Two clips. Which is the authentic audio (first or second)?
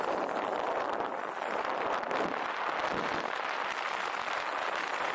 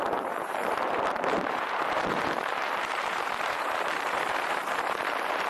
first